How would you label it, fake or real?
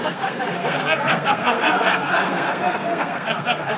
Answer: fake